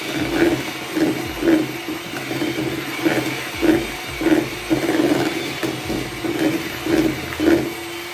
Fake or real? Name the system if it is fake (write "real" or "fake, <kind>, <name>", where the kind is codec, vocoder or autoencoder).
real